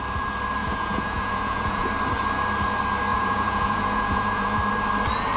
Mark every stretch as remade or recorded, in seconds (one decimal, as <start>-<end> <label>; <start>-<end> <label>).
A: 0.0-0.6 recorded; 0.6-1.9 remade; 1.9-3.1 recorded; 3.1-4.5 remade; 4.5-5.4 recorded